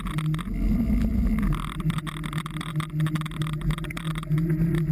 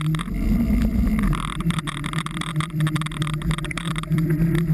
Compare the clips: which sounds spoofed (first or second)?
second